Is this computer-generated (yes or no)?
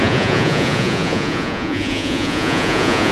yes